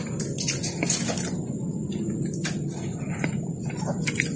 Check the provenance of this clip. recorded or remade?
remade